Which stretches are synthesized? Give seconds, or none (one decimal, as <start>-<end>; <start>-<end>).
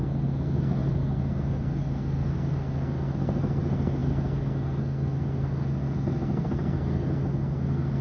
0.0-8.0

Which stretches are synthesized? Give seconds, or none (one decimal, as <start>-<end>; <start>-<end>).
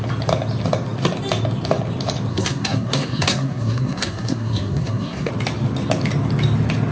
2.3-5.3